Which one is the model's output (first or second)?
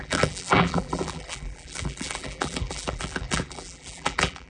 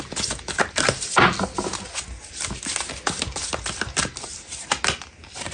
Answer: first